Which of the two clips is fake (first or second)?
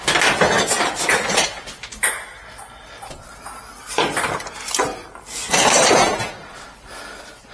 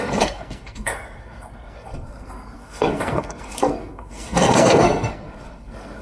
second